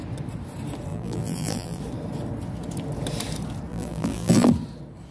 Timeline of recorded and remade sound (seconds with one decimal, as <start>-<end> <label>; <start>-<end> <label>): 0.0-0.9 recorded; 0.9-1.8 remade; 1.8-3.7 recorded; 3.7-4.5 remade; 4.5-5.1 recorded